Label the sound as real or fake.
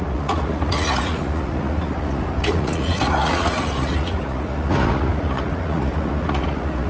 fake